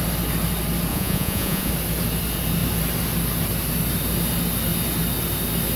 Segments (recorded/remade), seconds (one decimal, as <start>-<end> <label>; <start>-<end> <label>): 0.0-0.9 recorded; 0.9-1.7 remade; 1.7-5.8 recorded